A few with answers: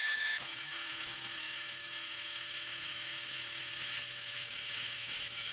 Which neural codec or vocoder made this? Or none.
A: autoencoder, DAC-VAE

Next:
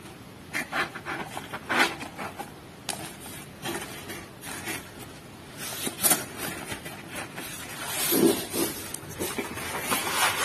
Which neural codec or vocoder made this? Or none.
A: none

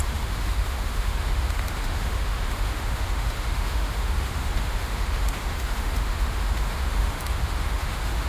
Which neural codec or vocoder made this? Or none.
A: autoencoder, DAC-VAE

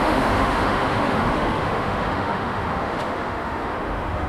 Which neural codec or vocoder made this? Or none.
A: autoencoder, DAC-VAE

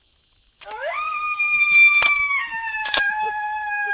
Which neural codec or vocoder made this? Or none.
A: autoencoder, DAC-VAE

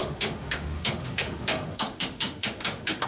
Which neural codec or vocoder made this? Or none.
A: autoencoder, DAC-VAE